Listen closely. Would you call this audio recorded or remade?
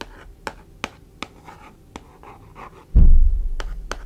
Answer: recorded